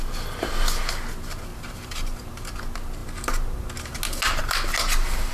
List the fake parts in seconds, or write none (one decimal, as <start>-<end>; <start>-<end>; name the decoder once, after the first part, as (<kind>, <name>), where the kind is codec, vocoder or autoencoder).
1.5-2.3 (vocoder, BigVGAN v2)